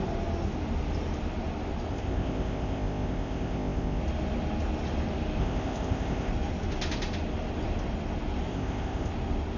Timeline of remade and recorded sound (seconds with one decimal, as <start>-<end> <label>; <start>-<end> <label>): 0.0-1.9 recorded; 1.9-4.0 remade; 4.0-5.4 recorded; 5.4-6.3 remade; 6.3-8.5 recorded; 8.5-9.1 remade; 9.1-9.6 recorded